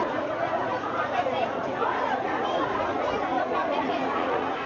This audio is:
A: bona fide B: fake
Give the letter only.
B